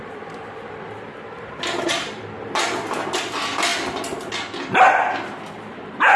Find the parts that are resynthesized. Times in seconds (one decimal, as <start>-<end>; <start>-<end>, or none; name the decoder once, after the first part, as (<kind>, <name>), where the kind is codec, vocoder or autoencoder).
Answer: none